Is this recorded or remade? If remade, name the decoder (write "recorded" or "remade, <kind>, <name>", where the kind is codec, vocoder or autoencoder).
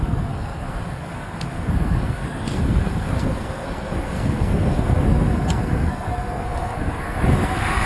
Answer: remade, codec, SNAC